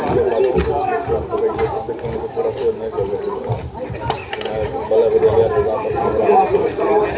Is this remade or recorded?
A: recorded